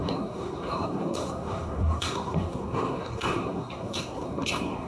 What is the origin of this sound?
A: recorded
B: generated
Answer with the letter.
B